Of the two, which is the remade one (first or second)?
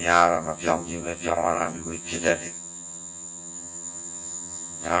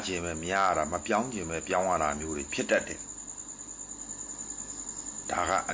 first